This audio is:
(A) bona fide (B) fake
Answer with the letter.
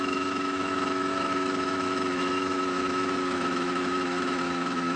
B